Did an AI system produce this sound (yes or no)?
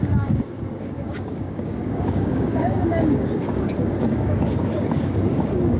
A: yes